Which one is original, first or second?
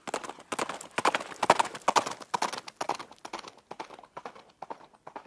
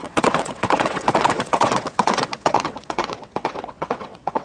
first